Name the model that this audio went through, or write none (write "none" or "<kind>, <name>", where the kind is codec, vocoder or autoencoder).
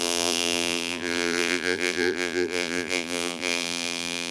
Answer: vocoder, BigVGAN v2